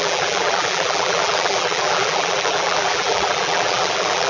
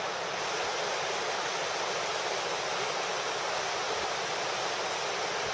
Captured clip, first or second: second